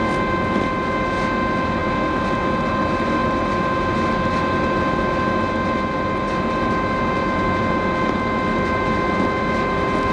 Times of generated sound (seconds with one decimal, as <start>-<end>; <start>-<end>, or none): none